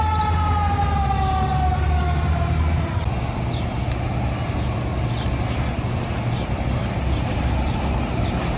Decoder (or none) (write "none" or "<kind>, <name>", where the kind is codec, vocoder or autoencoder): none